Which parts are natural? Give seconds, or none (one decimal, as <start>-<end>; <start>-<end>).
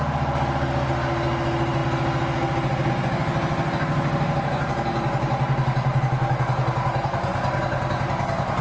0.0-4.9; 6.0-8.6